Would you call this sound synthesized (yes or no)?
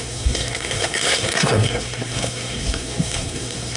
yes